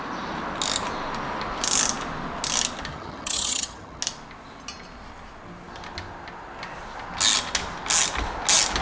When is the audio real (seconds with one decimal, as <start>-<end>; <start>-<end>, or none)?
0.0-2.9; 4.0-8.8